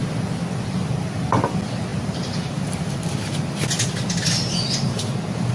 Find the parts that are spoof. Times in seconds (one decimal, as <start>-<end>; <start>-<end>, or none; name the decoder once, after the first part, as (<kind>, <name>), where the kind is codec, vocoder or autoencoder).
none